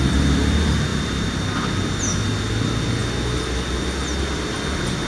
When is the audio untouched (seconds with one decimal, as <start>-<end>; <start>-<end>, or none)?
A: 0.0-5.1